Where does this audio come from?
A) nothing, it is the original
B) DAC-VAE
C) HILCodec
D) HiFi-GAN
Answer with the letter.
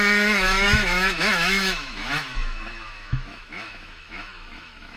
B